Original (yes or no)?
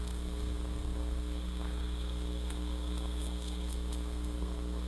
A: no